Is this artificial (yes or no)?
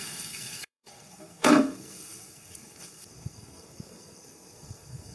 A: yes